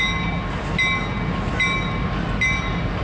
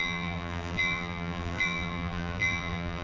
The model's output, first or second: second